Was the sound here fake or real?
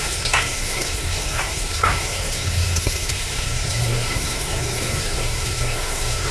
fake